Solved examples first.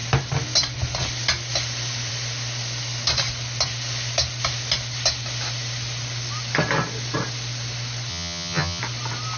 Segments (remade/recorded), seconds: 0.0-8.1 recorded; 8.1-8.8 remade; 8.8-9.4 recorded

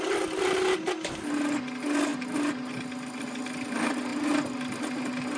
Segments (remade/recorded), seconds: 0.0-5.4 recorded

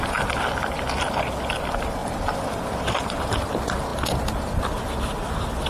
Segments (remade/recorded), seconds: 0.0-5.7 recorded

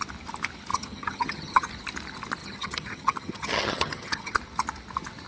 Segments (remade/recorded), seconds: 0.0-0.7 recorded; 0.7-1.7 remade; 1.7-2.4 recorded; 2.4-4.4 remade; 4.4-5.3 recorded

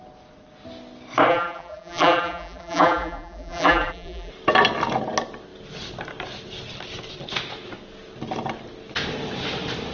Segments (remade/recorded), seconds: 0.0-1.3 recorded; 1.3-4.3 remade; 4.3-9.9 recorded

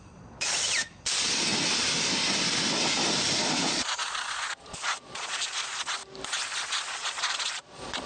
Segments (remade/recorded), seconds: 0.0-1.5 remade; 1.5-3.6 recorded; 3.6-4.0 remade; 4.0-4.5 recorded; 4.5-6.0 remade; 6.0-6.9 recorded; 6.9-8.1 remade